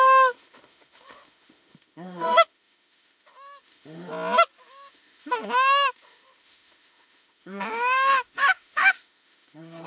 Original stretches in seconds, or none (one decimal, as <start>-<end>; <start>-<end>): 4.1-4.7

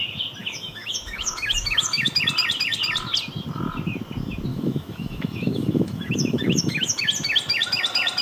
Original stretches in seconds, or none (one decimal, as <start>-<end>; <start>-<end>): 0.0-0.4; 2.1-4.5; 7.0-8.2

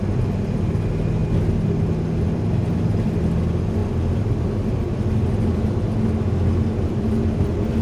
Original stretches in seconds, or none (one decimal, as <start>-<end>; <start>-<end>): 0.0-7.8

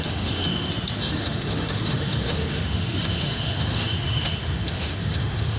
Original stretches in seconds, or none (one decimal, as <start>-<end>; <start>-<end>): 0.5-1.0

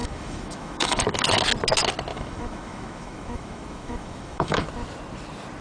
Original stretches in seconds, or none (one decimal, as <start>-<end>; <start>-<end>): 1.0-2.1; 4.7-5.6

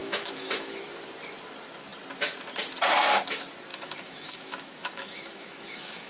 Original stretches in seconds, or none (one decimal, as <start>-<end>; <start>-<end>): 0.8-3.7

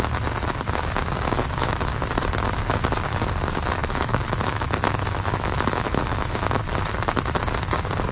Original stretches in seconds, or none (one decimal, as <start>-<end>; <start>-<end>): 0.0-3.8; 6.6-8.1

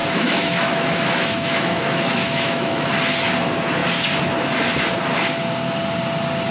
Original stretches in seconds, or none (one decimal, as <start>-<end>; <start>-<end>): 2.9-6.5